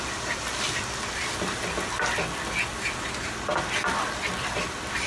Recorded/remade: recorded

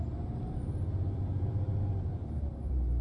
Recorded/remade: remade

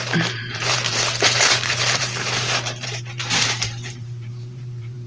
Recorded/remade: remade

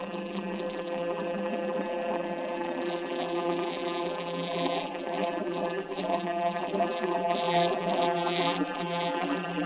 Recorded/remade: remade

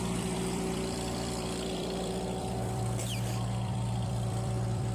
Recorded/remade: remade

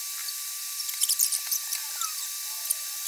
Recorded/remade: remade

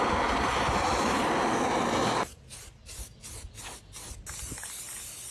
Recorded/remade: recorded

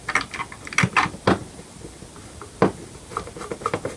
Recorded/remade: recorded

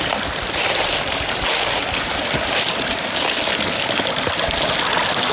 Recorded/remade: recorded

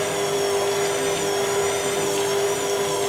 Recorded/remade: recorded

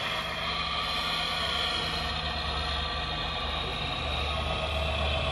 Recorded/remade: recorded